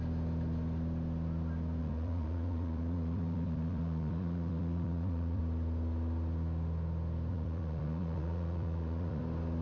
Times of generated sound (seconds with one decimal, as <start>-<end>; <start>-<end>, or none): 1.8-5.4; 7.3-9.2